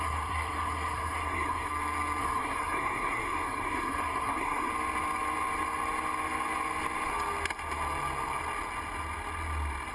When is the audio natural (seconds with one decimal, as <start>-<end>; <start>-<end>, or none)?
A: 1.7-2.2; 4.7-9.9